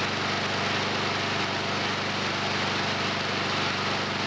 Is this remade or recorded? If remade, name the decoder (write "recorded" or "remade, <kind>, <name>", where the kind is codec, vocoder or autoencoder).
recorded